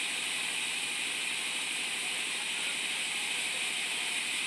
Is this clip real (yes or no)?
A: yes